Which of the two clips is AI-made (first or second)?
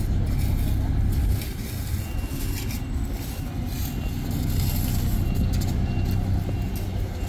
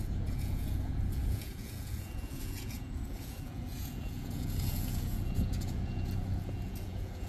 second